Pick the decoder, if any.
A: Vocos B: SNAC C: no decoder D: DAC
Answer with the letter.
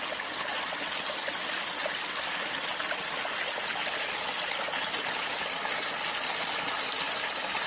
C